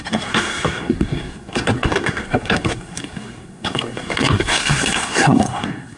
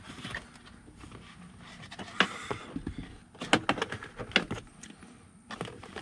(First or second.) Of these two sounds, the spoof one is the first